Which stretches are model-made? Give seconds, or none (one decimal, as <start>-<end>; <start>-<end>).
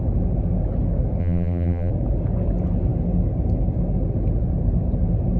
1.2-1.9